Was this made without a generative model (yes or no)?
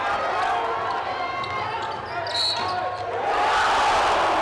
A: yes